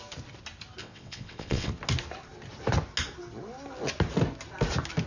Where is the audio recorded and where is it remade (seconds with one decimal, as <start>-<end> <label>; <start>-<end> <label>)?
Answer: 0.0-0.8 recorded; 0.8-1.7 remade; 1.7-5.1 recorded